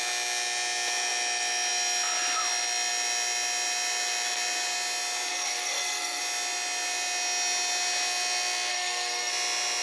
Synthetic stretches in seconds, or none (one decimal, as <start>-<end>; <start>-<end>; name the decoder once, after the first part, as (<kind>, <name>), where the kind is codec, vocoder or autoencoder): 5.3-6.2 (codec, SNAC); 8.7-9.3